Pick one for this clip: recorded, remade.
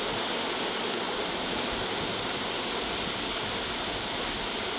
recorded